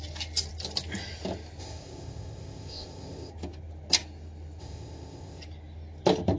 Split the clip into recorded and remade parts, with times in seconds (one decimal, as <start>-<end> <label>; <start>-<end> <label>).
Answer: 0.0-1.6 recorded; 1.6-3.3 remade; 3.3-4.6 recorded; 4.6-5.4 remade; 5.4-6.4 recorded